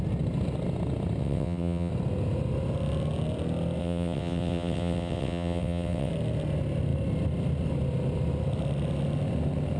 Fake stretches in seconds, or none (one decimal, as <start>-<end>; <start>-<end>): 1.2-1.9; 3.8-6.1